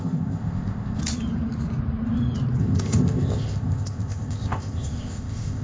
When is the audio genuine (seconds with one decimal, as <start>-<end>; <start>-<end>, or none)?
1.0-2.6